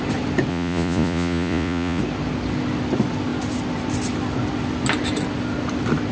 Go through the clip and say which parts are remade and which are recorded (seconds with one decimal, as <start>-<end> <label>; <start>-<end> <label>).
0.0-0.5 recorded; 0.5-2.0 remade; 2.0-6.1 recorded